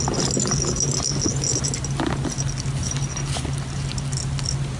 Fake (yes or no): no